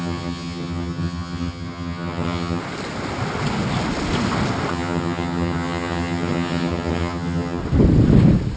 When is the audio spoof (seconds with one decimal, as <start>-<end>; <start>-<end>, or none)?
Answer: 0.0-2.6; 4.7-7.6

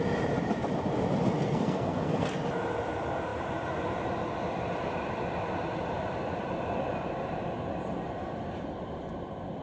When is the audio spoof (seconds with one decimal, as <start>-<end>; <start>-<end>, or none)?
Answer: 1.4-2.3

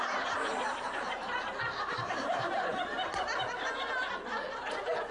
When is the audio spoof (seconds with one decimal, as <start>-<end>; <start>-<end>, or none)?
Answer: 0.7-3.8

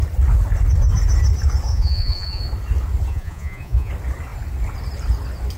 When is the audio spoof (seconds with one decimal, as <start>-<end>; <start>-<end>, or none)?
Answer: 1.7-2.4; 3.1-3.9